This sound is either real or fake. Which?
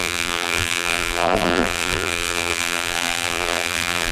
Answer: fake